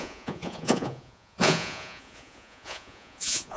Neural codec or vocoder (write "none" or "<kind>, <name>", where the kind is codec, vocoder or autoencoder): vocoder, Vocos